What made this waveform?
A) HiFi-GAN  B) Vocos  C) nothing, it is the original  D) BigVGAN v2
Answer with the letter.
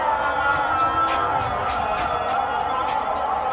C